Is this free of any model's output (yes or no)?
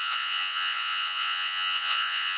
no